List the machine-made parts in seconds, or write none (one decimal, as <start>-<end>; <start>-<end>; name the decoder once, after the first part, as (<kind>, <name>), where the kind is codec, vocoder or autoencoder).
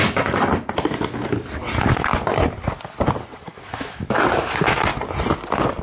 3.5-4.2 (autoencoder, DAC-VAE)